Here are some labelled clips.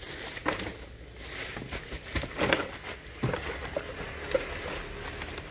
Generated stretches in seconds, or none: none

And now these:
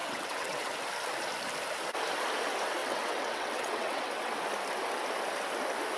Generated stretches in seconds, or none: 0.0-0.7; 2.8-4.3

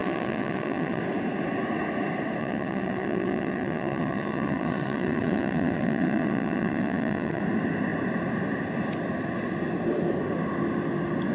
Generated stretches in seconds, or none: 0.0-1.0; 2.4-7.4

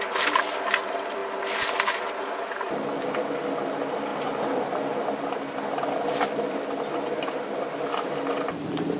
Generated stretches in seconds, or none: none

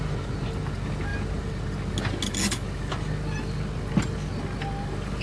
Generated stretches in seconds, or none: none

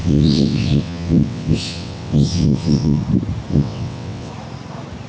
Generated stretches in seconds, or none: 0.0-3.0; 3.5-4.3